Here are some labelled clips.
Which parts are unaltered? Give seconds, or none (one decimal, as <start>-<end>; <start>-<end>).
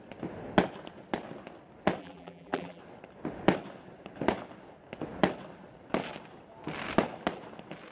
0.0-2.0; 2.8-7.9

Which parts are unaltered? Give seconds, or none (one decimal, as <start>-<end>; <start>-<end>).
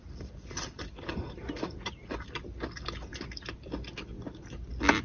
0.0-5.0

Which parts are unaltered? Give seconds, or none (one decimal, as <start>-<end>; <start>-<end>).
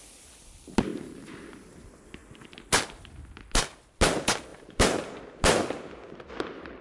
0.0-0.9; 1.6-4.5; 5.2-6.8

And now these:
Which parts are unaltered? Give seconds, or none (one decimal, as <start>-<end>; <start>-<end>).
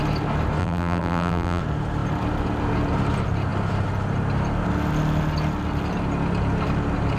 0.0-0.6; 1.6-7.2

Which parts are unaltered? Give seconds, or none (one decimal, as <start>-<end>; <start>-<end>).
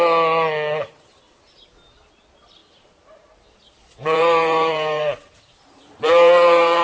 0.0-2.6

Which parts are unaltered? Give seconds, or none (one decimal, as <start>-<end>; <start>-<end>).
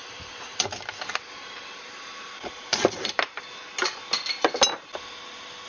3.4-5.7